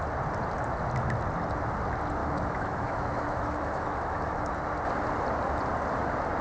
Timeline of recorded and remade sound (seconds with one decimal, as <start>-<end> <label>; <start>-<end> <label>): 0.0-2.2 recorded; 2.2-4.5 remade; 4.5-6.4 recorded